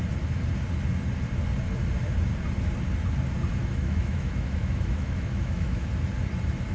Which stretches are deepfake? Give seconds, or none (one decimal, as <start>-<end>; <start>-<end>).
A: 3.6-5.9